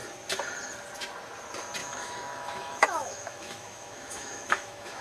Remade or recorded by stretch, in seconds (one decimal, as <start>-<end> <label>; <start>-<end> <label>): 0.0-1.8 recorded; 1.8-5.0 remade